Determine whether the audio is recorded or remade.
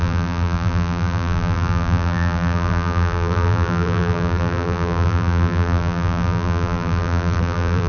remade